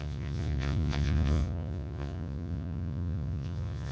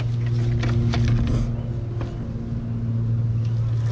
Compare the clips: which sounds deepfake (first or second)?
first